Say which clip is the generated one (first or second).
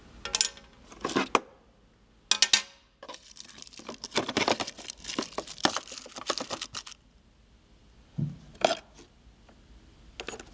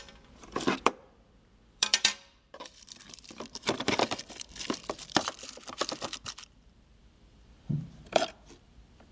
second